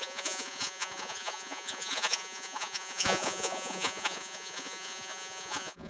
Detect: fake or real fake